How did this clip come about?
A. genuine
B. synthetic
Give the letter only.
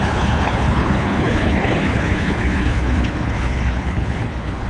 B